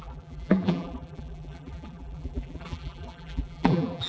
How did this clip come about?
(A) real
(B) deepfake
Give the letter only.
B